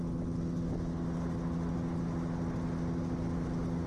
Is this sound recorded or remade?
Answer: recorded